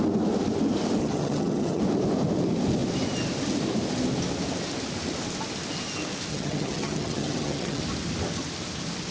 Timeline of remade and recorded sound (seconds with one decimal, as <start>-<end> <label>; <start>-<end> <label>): 0.0-1.0 recorded; 1.0-1.8 remade; 1.8-6.3 recorded; 6.3-7.8 remade; 7.8-9.1 recorded